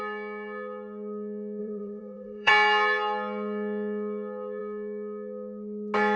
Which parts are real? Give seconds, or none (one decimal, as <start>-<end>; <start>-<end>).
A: 0.0-1.6; 2.5-6.2